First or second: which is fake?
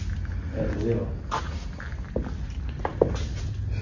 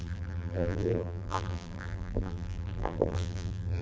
second